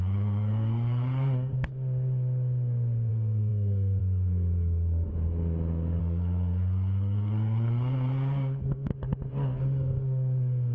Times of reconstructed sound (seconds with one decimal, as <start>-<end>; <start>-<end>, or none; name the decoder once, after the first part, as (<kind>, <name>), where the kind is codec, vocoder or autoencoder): 0.0-1.7 (codec, SNAC); 3.1-5.1; 6.0-8.9; 9.6-10.7